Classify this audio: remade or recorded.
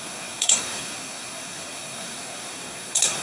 remade